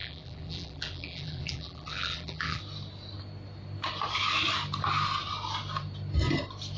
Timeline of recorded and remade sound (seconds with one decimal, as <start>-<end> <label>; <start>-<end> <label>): 0.0-2.6 remade; 2.6-6.8 recorded